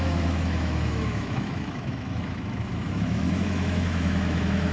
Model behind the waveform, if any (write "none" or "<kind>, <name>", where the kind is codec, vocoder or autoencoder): autoencoder, DAC-VAE